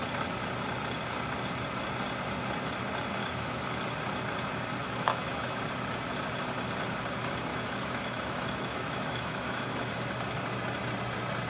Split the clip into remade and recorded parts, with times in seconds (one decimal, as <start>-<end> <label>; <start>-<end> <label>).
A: 0.0-3.2 recorded; 3.2-3.8 remade; 3.8-4.8 recorded; 4.8-5.6 remade; 5.6-7.5 recorded; 7.5-9.9 remade; 9.9-11.5 recorded